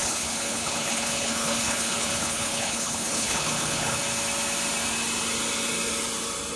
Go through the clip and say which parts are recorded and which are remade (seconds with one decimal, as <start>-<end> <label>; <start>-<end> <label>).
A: 0.0-4.0 remade; 4.0-6.6 recorded